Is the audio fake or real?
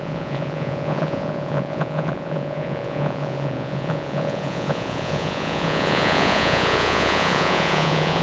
fake